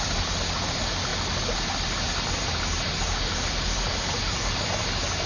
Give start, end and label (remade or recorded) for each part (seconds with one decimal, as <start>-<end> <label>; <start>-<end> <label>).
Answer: 0.0-5.3 recorded